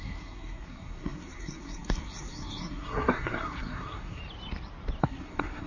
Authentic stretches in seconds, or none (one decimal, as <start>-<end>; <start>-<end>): 4.2-5.0